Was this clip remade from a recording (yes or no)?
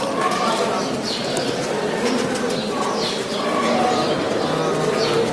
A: no